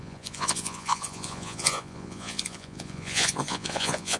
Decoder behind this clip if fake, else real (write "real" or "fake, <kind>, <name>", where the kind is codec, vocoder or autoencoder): fake, vocoder, Vocos